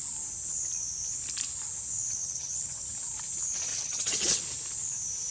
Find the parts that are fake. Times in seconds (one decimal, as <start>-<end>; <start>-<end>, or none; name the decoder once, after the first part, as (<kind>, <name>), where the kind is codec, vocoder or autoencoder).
2.2-2.8 (vocoder, HiFi-GAN); 3.7-4.4